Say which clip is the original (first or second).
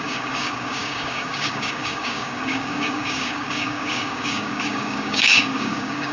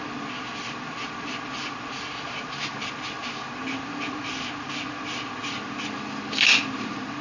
second